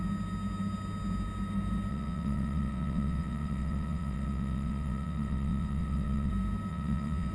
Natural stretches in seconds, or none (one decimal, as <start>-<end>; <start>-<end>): 0.0-1.9; 6.3-6.7